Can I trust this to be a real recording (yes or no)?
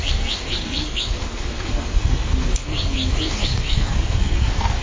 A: no